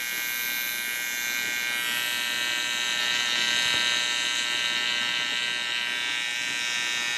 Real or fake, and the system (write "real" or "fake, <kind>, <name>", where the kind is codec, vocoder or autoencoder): real